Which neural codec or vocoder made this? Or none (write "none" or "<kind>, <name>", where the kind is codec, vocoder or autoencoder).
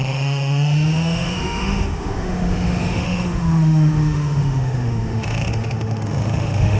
autoencoder, DAC-VAE